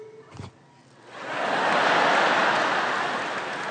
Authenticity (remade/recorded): recorded